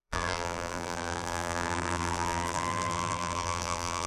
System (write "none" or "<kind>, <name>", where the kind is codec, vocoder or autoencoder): vocoder, BigVGAN v2